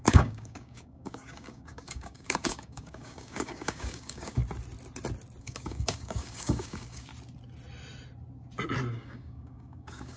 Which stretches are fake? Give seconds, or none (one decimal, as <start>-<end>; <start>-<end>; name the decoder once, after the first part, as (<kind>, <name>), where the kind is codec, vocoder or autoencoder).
0.0-4.4 (codec, DAC); 5.4-7.1; 8.9-10.2